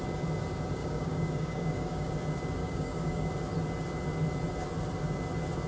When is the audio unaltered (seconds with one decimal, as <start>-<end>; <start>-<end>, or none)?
0.0-0.8; 2.1-2.6; 3.3-5.7